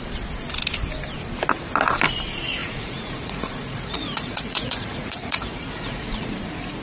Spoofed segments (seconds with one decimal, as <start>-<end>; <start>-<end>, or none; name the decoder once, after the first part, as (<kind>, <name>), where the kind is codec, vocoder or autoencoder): 2.6-6.8 (vocoder, Vocos)